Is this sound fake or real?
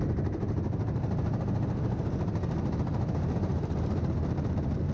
fake